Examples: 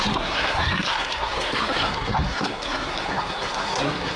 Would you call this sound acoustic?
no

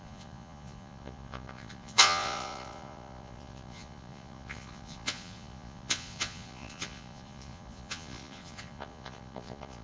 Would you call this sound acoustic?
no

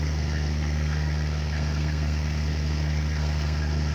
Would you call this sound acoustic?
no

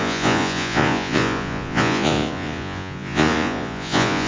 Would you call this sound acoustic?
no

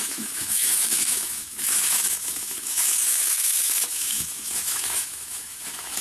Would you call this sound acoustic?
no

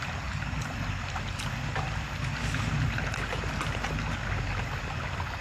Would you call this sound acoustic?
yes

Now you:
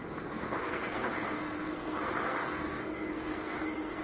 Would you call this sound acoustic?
no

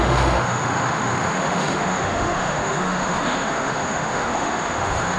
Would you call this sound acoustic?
no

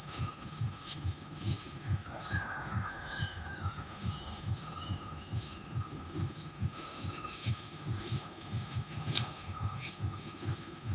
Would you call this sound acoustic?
no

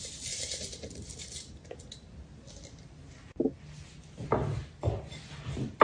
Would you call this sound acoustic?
yes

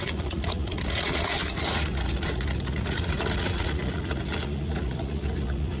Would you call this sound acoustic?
no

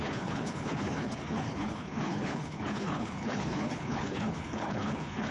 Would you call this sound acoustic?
no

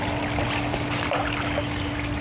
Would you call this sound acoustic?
yes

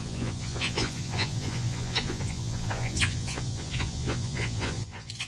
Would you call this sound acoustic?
no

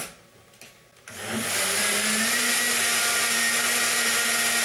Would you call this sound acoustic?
yes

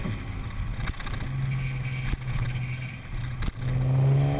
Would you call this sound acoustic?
yes